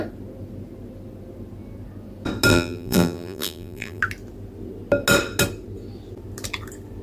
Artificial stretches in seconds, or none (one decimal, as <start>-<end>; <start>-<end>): 2.5-4.0